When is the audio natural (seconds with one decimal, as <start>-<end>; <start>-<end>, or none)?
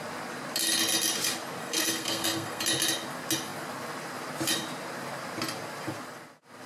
0.0-1.6; 2.6-6.7